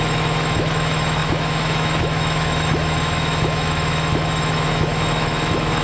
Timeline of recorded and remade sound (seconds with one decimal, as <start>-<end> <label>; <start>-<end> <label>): 0.0-5.8 remade

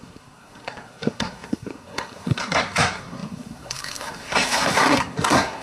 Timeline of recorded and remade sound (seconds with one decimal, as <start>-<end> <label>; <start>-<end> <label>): 0.0-5.6 remade

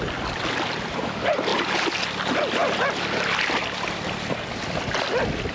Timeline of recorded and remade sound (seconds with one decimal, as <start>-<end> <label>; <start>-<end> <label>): 0.0-5.5 recorded

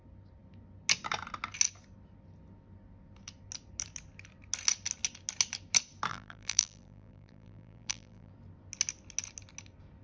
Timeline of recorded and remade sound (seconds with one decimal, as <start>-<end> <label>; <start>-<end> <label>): 0.0-6.1 recorded; 6.1-8.3 remade; 8.3-10.0 recorded

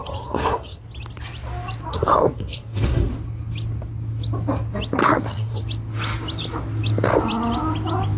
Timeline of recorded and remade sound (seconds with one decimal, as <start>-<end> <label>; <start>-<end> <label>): 0.0-0.8 remade; 0.8-1.9 recorded; 1.9-3.1 remade; 3.1-5.0 recorded; 5.0-5.6 remade; 5.6-8.2 recorded

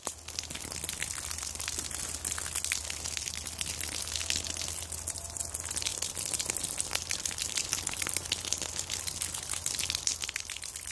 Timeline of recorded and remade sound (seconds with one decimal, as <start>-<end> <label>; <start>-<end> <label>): 0.0-10.9 recorded

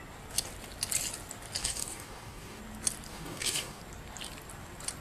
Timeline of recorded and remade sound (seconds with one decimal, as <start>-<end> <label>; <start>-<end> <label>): 0.0-1.6 recorded; 1.6-2.6 remade; 2.6-3.1 recorded; 3.1-3.8 remade; 3.8-5.0 recorded